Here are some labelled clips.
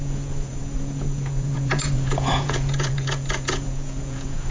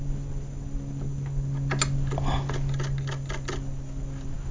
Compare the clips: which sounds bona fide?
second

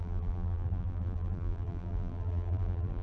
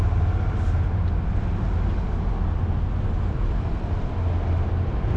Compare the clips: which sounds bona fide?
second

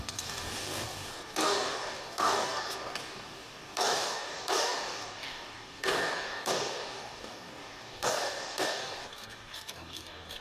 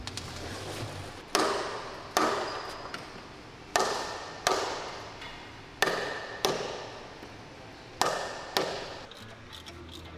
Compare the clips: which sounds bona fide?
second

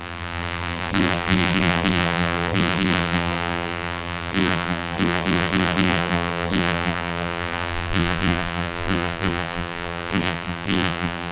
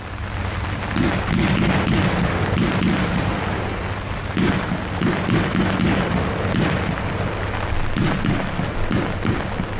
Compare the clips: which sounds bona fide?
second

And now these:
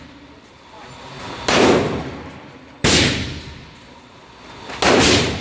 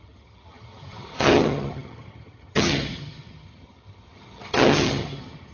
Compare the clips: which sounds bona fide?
first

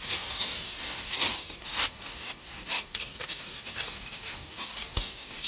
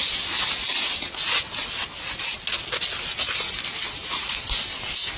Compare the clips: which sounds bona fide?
second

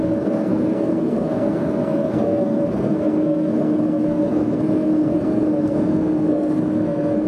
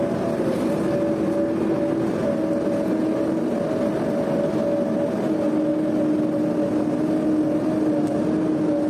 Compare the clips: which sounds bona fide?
second